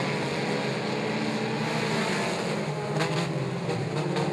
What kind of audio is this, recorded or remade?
recorded